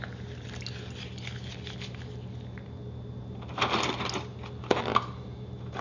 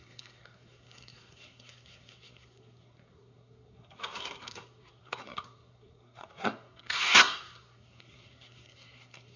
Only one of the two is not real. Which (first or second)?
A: second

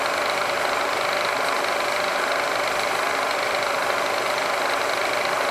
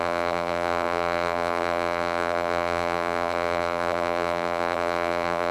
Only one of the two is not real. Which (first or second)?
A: second